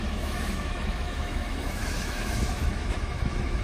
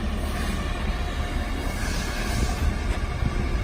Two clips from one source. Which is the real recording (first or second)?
second